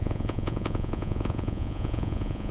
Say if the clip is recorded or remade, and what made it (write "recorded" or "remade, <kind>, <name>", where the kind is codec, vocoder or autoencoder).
remade, vocoder, Vocos